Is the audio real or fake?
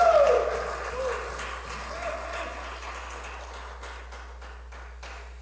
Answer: real